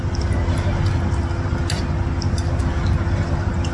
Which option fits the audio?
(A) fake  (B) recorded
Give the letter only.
B